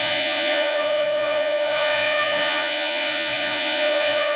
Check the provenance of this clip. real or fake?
fake